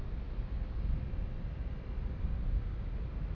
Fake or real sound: real